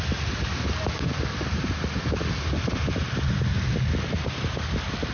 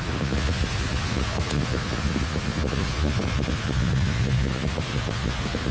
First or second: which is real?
first